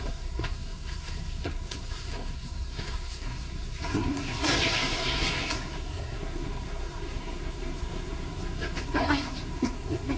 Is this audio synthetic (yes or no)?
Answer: yes